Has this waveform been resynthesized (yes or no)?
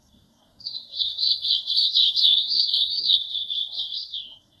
yes